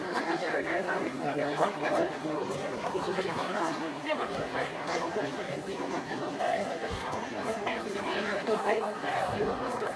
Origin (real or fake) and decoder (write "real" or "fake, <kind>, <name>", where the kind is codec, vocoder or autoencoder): fake, codec, SNAC